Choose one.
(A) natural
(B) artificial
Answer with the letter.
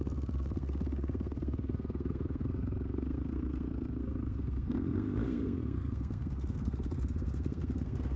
B